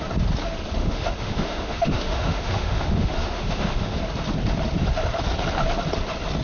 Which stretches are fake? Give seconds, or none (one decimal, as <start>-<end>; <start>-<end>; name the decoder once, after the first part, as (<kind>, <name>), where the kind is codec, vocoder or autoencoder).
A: 0.8-4.0 (autoencoder, DAC-VAE)